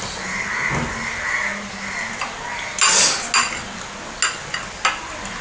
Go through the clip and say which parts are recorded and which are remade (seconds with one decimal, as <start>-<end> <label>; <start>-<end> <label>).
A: 0.0-5.4 recorded